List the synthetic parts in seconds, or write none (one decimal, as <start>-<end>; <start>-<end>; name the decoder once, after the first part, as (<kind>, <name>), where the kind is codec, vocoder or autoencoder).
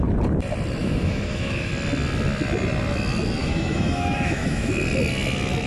0.8-1.7 (autoencoder, DAC-VAE); 3.4-4.7